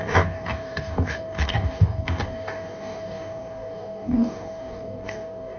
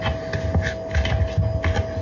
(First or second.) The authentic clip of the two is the second